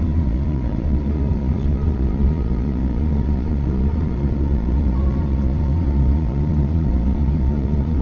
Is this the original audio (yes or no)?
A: no